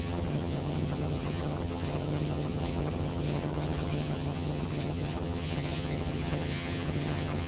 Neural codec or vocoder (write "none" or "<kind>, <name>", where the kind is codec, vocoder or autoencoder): vocoder, HiFi-GAN